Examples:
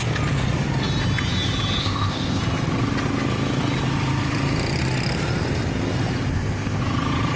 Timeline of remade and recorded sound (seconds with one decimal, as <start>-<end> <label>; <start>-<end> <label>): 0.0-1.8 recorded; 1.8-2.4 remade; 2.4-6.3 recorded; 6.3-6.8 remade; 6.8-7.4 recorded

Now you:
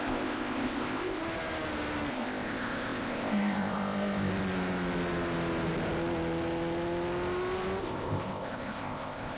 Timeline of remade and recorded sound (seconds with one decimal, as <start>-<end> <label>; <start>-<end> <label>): 0.0-1.2 remade; 1.2-2.1 recorded; 2.1-4.3 remade; 4.3-7.8 recorded; 7.8-9.4 remade

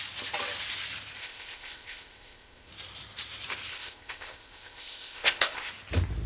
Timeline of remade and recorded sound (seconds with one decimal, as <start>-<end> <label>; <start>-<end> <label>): 0.0-1.2 recorded; 1.2-2.7 remade; 2.7-3.7 recorded; 3.7-5.7 remade; 5.7-6.3 recorded